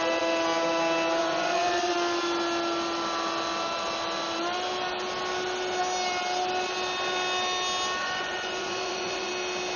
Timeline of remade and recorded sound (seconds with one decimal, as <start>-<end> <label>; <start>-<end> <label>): 0.0-1.2 recorded; 1.2-1.9 remade; 1.9-8.0 recorded; 8.0-9.3 remade; 9.3-9.8 recorded